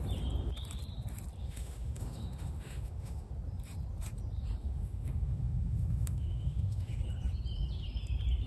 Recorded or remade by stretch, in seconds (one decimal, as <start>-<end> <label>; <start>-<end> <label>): 0.0-1.4 recorded; 1.4-3.3 remade; 3.3-4.6 recorded; 4.6-7.0 remade; 7.0-8.5 recorded